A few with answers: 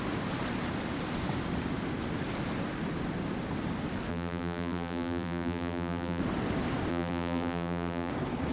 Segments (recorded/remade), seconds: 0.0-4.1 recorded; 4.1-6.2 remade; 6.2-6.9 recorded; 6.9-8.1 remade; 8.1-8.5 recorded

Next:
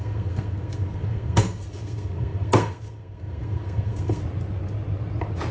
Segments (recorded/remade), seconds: 0.0-4.2 remade; 4.2-5.5 recorded

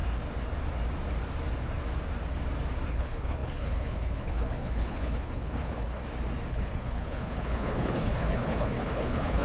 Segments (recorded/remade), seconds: 0.0-2.9 recorded; 2.9-6.0 remade; 6.0-6.5 recorded; 6.5-9.4 remade